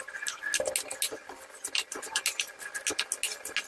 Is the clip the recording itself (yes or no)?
yes